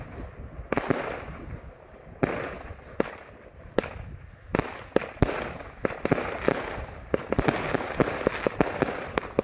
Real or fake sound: real